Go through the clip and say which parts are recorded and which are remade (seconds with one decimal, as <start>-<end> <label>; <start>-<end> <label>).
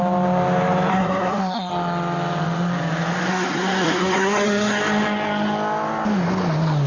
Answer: 0.0-0.9 recorded; 0.9-1.7 remade; 1.7-3.3 recorded; 3.3-4.8 remade; 4.8-6.9 recorded